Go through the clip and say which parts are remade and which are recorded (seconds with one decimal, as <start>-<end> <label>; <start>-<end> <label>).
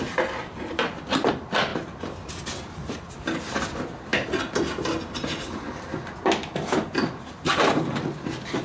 0.0-8.6 recorded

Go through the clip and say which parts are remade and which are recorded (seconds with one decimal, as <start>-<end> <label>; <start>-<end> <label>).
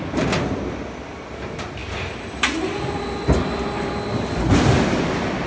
0.0-5.5 recorded